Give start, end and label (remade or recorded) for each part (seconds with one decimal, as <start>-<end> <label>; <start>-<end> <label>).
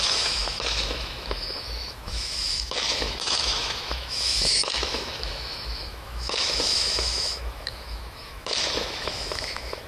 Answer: 0.0-9.9 remade